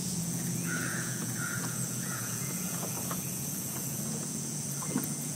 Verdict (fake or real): fake